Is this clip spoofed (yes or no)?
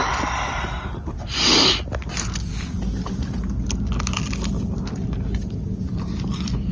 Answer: no